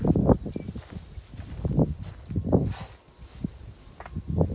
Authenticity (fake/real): fake